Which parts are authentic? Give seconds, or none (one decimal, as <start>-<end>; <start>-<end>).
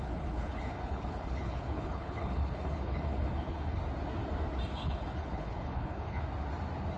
3.8-4.7; 6.2-7.0